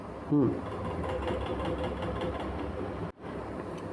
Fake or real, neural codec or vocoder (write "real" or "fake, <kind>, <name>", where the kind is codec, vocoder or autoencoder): real